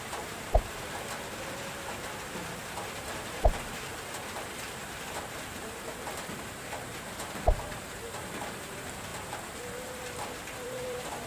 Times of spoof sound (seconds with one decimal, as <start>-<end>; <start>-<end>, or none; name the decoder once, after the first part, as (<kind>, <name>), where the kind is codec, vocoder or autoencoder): 0.0-11.3 (vocoder, BigVGAN v2)